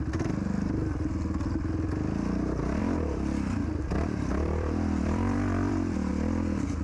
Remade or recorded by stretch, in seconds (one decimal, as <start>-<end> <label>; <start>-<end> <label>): 0.0-2.8 recorded; 2.8-6.1 remade; 6.1-6.8 recorded